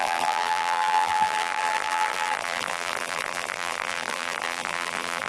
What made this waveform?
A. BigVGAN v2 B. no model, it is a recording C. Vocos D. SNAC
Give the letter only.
A